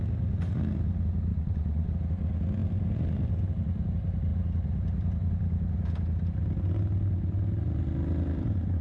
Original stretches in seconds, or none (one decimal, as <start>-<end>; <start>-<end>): 0.0-1.3; 1.9-8.8